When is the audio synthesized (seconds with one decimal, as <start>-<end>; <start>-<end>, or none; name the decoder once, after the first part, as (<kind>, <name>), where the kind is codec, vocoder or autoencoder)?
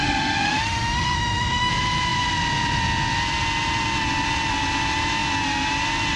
0.0-1.7 (autoencoder, DAC-VAE)